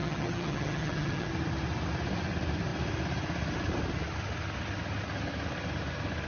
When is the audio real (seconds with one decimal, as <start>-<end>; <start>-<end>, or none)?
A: 1.3-6.3